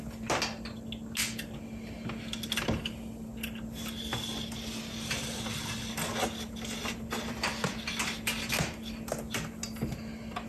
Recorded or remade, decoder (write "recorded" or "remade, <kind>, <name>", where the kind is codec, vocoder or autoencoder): recorded